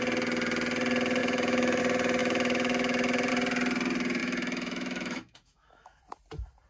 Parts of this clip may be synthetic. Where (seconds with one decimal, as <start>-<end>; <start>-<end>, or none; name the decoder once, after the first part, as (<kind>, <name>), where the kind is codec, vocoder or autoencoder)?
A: 1.2-1.8 (autoencoder, DAC-VAE); 2.2-3.3; 4.2-6.0